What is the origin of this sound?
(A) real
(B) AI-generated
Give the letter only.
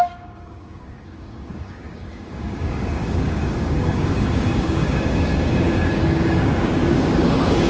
B